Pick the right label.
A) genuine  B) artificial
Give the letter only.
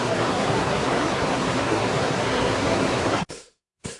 B